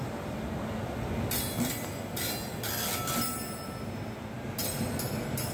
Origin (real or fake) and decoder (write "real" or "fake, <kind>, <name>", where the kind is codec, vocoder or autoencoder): real